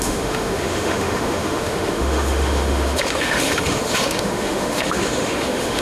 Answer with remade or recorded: remade